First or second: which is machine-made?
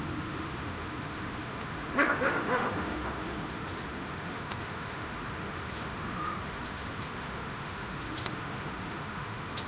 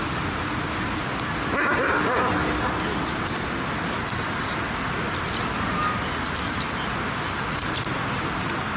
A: first